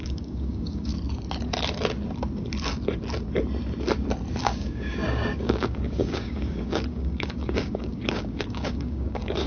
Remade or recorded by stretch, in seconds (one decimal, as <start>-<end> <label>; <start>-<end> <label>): 0.0-0.9 remade; 0.9-4.4 recorded; 4.4-9.5 remade